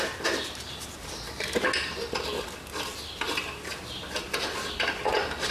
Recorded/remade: recorded